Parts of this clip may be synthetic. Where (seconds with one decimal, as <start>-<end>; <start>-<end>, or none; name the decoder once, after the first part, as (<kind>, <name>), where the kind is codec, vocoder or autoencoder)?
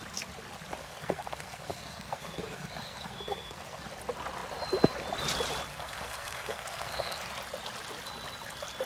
0.8-3.8 (codec, SNAC); 5.7-7.3